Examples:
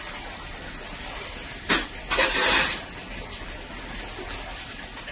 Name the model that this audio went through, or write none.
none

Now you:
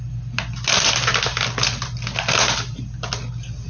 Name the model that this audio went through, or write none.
none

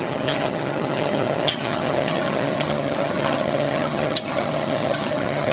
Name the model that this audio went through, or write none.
vocoder, HiFi-GAN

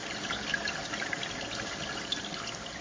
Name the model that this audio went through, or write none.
none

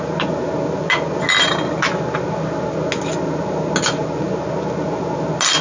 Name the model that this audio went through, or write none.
none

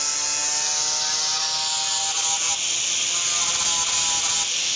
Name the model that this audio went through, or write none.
none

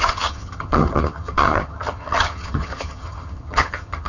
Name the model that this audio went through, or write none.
vocoder, HiFi-GAN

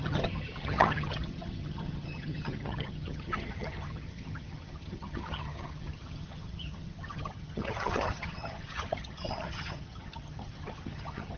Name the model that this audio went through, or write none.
vocoder, HiFi-GAN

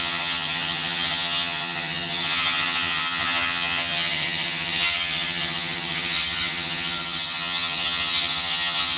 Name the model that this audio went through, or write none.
vocoder, HiFi-GAN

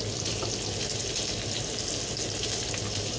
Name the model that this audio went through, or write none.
none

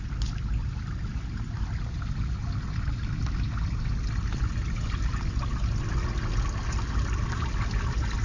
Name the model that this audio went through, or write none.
none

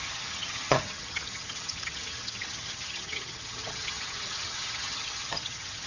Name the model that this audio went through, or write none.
vocoder, HiFi-GAN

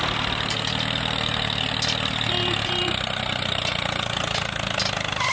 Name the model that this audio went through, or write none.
none